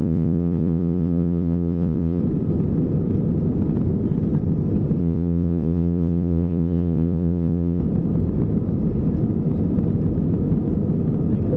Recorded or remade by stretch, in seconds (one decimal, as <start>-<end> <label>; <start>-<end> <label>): 0.0-2.2 remade; 2.2-5.0 recorded; 5.0-7.8 remade; 7.8-11.6 recorded